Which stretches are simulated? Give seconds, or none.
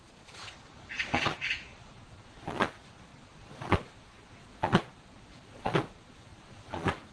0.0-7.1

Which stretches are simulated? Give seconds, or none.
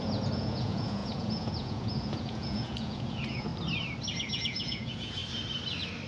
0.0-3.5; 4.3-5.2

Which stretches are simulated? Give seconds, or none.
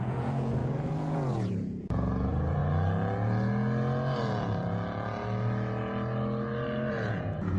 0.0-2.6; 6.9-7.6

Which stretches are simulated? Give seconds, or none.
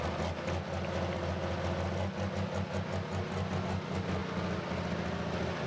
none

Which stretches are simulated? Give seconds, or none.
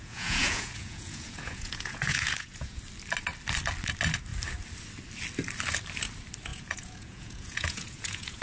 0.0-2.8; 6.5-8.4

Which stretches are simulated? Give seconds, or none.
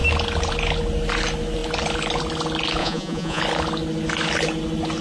2.8-3.4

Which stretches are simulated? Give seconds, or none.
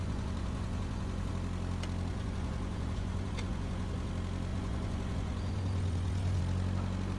0.0-1.3; 2.1-4.1; 4.5-6.4